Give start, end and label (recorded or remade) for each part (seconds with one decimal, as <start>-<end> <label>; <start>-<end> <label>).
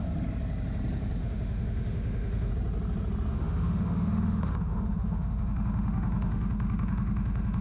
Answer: 0.0-1.2 recorded; 1.2-2.5 remade; 2.5-3.3 recorded; 3.3-7.6 remade